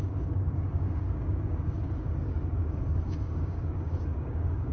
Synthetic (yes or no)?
yes